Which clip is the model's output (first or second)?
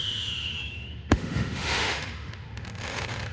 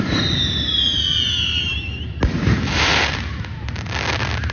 first